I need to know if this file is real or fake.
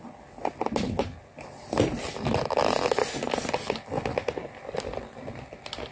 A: real